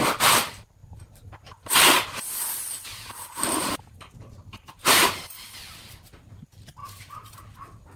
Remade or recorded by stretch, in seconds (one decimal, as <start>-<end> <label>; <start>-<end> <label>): 0.0-0.8 recorded; 0.8-5.2 remade; 5.2-6.8 recorded; 6.8-7.4 remade; 7.4-8.0 recorded